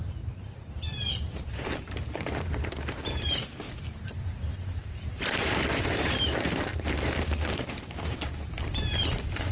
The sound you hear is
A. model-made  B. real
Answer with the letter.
A